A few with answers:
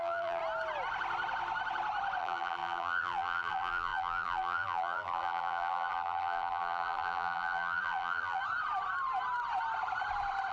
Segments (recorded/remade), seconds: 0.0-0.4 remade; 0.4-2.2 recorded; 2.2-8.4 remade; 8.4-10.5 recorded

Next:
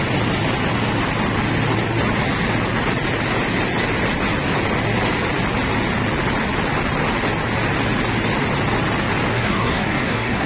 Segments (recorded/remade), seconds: 0.0-9.3 recorded; 9.3-10.5 remade